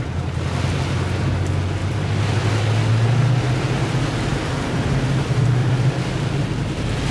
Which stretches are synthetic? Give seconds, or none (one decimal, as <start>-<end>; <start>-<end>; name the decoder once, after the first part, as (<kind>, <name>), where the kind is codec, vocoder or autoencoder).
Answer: 1.8-2.6 (vocoder, BigVGAN v2); 4.3-5.0; 5.6-7.1